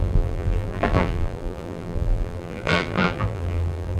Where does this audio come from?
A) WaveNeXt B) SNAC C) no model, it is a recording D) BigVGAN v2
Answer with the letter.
D